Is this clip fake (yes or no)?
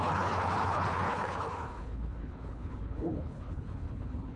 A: yes